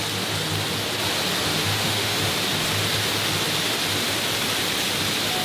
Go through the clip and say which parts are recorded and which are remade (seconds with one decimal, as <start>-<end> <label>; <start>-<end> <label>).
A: 0.0-1.6 recorded; 1.6-2.3 remade; 2.3-5.4 recorded

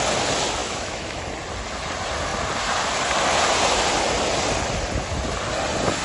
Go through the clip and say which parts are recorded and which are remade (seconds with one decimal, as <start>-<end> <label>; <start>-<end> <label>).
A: 0.0-0.6 recorded; 0.6-1.2 remade; 1.2-6.0 recorded

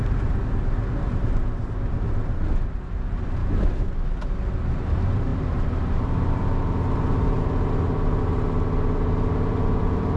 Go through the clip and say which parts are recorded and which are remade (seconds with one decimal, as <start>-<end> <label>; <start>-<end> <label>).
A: 0.0-3.4 recorded; 3.4-3.9 remade; 3.9-10.2 recorded

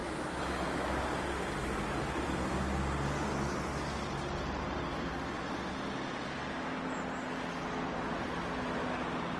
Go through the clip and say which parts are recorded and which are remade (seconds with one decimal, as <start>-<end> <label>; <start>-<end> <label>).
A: 0.0-1.0 remade; 1.0-9.4 recorded

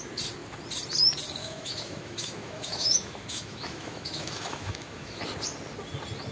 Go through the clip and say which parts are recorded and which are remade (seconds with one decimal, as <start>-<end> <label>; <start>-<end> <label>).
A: 0.0-1.4 recorded; 1.4-5.2 remade; 5.2-6.3 recorded